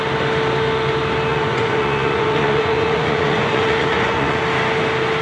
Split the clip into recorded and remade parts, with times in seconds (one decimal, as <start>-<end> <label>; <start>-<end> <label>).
0.0-1.3 recorded; 1.3-4.4 remade; 4.4-5.2 recorded